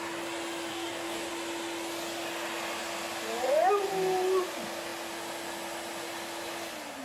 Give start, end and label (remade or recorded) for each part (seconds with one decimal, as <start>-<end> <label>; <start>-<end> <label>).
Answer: 0.0-0.7 recorded; 0.7-1.3 remade; 1.3-7.0 recorded